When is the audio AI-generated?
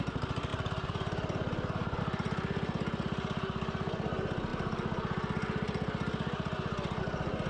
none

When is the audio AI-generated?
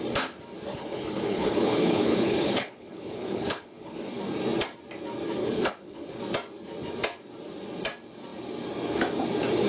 0.7-4.1 (codec, HILCodec); 5.4-6.2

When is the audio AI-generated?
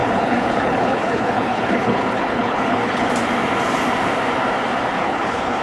0.0-3.1 (codec, HILCodec); 5.0-5.6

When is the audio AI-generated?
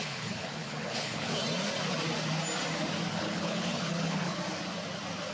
0.0-1.4 (codec, HILCodec); 3.1-4.4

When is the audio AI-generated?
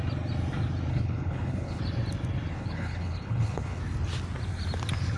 0.9-1.8 (codec, HILCodec); 2.5-3.8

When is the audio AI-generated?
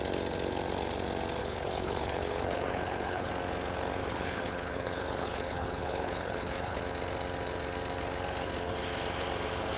1.4-3.3 (codec, HILCodec); 4.0-6.8